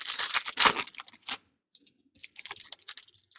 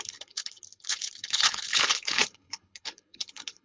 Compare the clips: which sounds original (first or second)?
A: first